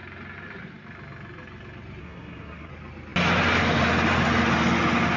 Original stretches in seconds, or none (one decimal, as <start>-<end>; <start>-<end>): 0.0-2.0; 2.7-5.2